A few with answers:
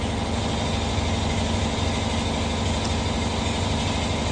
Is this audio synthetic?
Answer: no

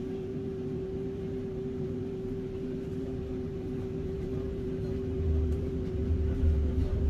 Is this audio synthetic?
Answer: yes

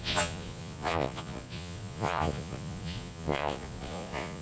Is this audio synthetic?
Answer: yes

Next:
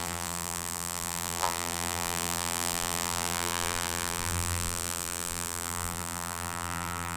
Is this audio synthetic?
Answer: yes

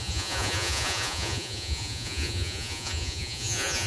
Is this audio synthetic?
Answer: yes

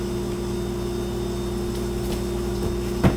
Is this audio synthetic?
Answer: no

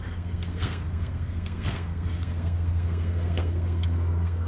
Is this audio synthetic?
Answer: yes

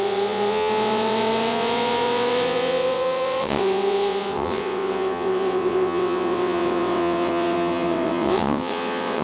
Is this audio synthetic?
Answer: yes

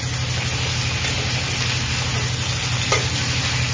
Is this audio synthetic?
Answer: no